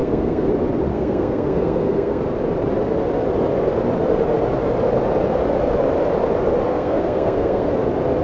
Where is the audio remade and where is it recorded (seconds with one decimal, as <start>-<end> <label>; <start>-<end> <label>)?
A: 0.0-0.5 remade; 0.5-0.9 recorded; 0.9-2.2 remade; 2.2-6.7 recorded; 6.7-7.7 remade; 7.7-8.2 recorded